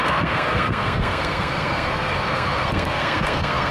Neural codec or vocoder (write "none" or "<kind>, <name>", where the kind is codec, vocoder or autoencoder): codec, SNAC